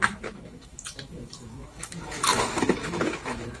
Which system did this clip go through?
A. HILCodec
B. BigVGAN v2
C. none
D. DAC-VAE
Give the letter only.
D